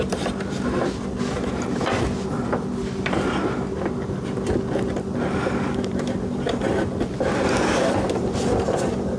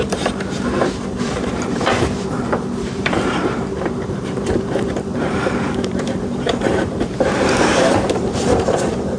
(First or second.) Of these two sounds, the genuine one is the first